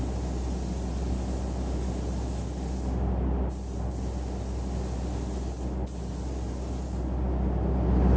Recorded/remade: recorded